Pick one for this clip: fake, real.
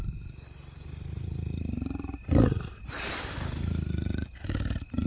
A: real